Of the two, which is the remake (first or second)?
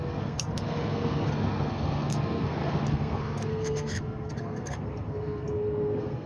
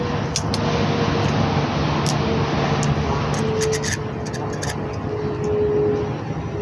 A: first